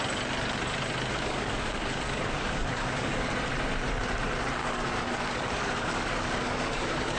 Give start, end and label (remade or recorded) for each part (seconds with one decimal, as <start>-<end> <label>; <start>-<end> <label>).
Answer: 0.0-1.1 recorded; 1.1-3.3 remade; 3.3-4.6 recorded; 4.6-7.2 remade